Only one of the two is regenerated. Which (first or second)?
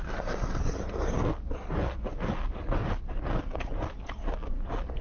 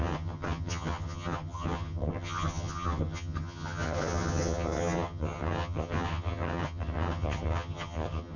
second